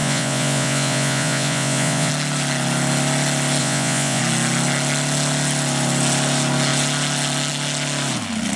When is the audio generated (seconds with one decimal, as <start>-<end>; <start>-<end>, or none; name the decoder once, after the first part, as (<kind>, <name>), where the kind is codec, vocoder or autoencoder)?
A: 0.0-2.1 (vocoder, Vocos); 3.6-4.2